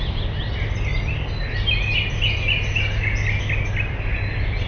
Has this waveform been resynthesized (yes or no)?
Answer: no